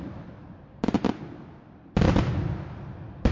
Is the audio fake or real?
real